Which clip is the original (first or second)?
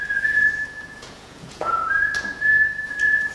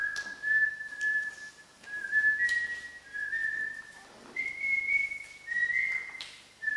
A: second